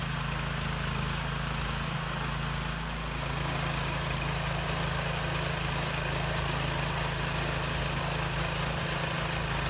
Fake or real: real